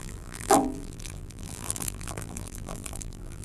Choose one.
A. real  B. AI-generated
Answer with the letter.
B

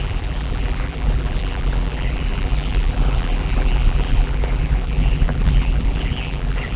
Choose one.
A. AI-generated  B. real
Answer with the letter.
A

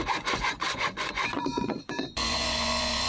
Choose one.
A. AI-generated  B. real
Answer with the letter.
A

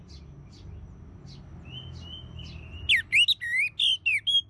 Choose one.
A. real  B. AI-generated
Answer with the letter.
A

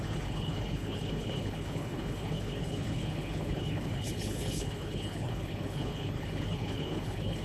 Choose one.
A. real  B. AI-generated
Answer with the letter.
B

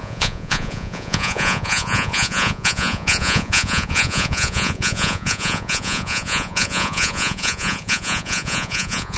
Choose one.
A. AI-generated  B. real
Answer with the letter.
A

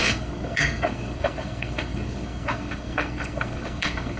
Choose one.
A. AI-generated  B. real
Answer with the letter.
A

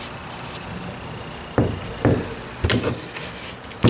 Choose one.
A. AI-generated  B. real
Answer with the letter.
B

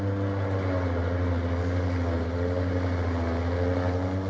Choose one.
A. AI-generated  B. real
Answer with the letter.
B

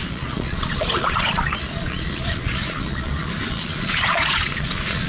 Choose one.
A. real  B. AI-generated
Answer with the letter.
B